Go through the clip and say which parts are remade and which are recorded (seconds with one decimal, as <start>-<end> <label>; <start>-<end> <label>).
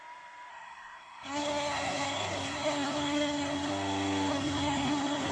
0.0-0.5 recorded; 0.5-3.7 remade; 3.7-4.3 recorded; 4.3-5.3 remade